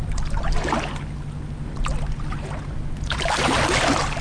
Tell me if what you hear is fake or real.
real